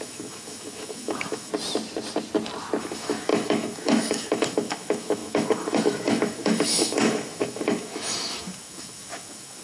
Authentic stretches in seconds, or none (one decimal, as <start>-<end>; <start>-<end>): 1.5-2.8